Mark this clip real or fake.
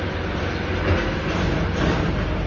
real